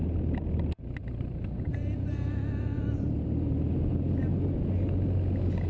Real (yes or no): yes